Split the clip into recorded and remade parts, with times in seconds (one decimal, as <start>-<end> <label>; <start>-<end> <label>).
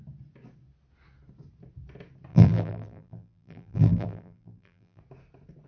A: 0.0-2.3 recorded; 2.3-5.0 remade; 5.0-5.7 recorded